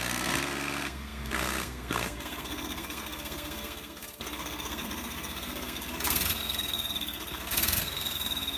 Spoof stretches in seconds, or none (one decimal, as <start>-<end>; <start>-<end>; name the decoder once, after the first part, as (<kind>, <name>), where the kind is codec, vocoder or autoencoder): 0.0-8.6 (codec, SNAC)